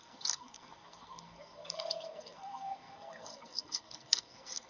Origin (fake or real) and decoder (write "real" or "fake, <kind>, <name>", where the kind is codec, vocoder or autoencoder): fake, codec, SNAC